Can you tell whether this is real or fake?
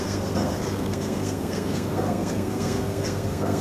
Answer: fake